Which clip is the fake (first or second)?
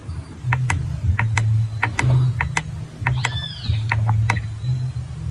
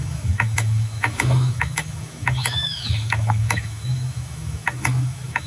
second